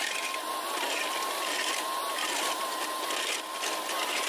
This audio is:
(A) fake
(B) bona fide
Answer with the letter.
B